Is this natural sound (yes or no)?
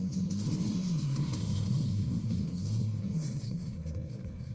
no